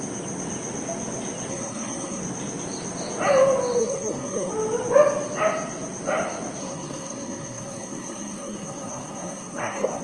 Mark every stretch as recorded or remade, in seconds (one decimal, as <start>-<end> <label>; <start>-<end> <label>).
0.0-1.5 recorded; 1.5-2.2 remade; 2.2-3.8 recorded; 3.8-4.5 remade; 4.5-6.6 recorded; 6.6-10.0 remade